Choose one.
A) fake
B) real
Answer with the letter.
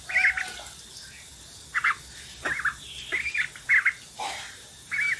B